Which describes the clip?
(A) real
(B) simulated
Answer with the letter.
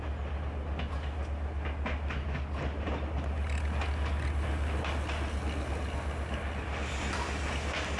A